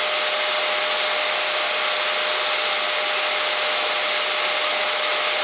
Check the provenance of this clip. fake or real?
real